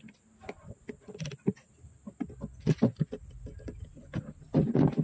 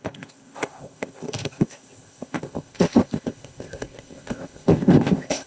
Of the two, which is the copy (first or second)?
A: second